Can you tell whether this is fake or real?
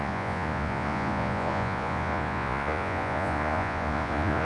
fake